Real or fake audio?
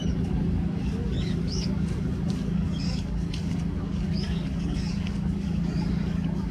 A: fake